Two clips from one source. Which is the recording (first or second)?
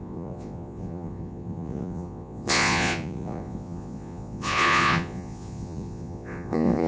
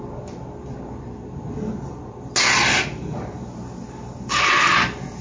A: second